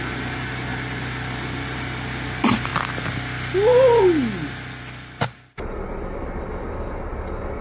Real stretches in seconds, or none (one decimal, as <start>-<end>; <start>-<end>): 0.0-7.6